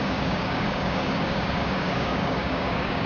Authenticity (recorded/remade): remade